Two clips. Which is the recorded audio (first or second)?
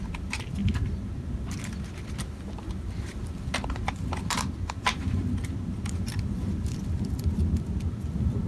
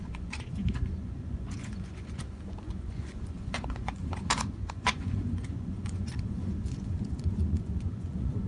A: first